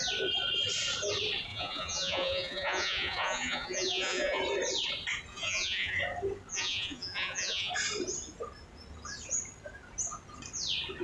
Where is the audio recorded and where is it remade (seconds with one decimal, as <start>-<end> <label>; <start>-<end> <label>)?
0.0-1.5 recorded; 1.5-4.4 remade; 4.4-5.3 recorded; 5.3-6.0 remade; 6.0-6.5 recorded; 6.5-7.7 remade; 7.7-11.0 recorded